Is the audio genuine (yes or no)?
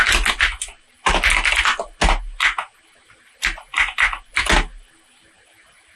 yes